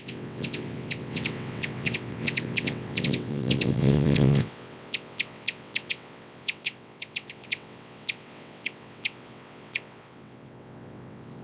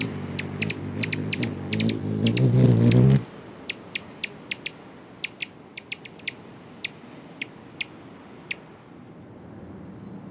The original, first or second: second